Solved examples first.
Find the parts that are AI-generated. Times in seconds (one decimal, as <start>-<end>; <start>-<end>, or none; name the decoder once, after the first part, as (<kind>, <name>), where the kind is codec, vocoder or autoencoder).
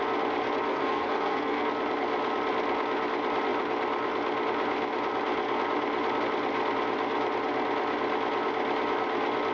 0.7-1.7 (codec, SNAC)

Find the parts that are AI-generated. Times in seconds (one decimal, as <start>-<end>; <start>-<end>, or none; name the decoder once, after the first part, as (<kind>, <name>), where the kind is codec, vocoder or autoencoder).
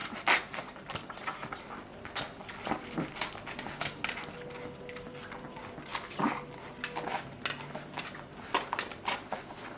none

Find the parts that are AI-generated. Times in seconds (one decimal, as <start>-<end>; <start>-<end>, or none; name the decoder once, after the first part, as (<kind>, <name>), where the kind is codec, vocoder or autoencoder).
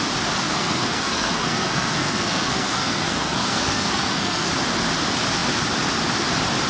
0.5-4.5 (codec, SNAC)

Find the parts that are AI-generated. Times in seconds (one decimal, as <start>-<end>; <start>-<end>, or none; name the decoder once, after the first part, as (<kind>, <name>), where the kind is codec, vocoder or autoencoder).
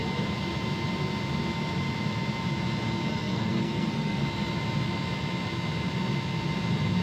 3.1-4.2 (codec, SNAC)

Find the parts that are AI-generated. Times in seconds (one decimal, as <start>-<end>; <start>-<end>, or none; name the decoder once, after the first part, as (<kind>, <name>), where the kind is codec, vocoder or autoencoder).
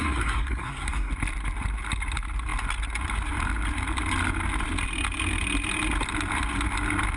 0.0-1.1 (codec, SNAC)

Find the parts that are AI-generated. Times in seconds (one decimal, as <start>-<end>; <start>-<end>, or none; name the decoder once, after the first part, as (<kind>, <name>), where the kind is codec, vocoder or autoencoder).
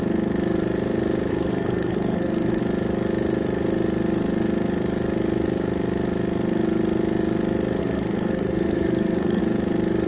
1.3-2.6 (codec, SNAC); 7.8-9.4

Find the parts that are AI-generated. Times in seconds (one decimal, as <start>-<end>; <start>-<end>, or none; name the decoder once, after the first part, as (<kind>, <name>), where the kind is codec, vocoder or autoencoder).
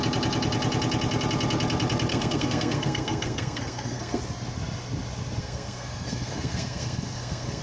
2.1-4.2 (codec, SNAC); 5.4-7.6